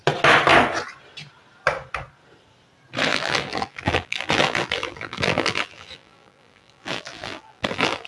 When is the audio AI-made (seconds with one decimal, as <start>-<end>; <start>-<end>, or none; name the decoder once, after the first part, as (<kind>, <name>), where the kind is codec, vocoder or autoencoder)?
3.1-8.1 (vocoder, BigVGAN v2)